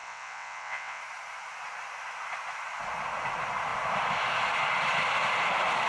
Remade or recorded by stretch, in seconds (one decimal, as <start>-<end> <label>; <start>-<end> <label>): 0.0-1.0 remade; 1.0-5.9 recorded